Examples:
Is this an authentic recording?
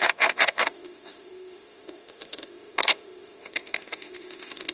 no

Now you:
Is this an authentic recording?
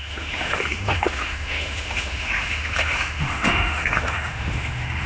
no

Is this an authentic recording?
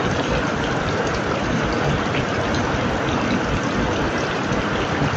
yes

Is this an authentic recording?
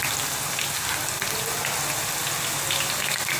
yes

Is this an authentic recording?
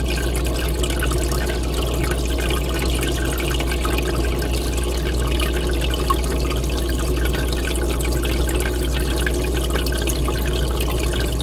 yes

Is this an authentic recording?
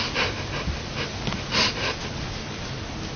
yes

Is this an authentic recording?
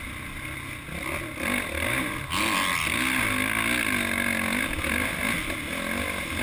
yes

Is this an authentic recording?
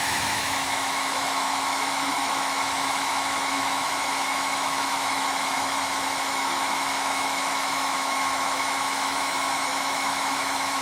no